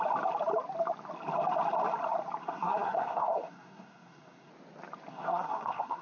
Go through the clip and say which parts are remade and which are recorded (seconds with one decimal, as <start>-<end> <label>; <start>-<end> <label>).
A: 0.0-2.4 recorded; 2.4-4.5 remade; 4.5-5.1 recorded; 5.1-6.0 remade